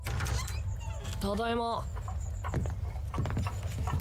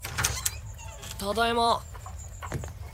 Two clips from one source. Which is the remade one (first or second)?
second